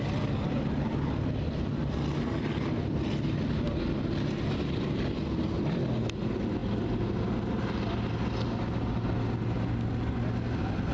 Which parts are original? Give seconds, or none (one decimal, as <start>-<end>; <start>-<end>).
0.0-10.9